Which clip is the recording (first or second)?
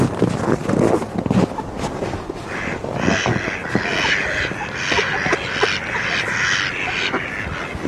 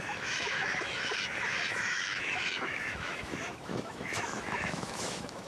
first